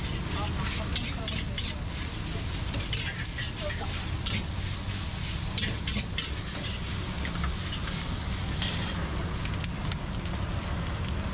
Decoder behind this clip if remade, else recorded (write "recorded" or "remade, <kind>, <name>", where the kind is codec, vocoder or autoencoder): recorded